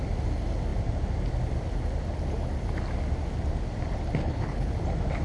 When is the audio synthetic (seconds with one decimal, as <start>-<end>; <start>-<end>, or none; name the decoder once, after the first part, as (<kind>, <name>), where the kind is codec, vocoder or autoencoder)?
4.2-4.7 (codec, HILCodec)